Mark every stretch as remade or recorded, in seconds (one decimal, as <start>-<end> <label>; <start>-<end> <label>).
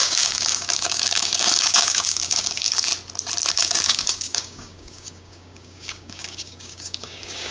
0.0-2.9 remade; 2.9-3.5 recorded; 3.5-7.5 remade